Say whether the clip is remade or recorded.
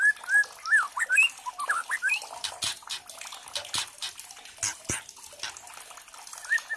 recorded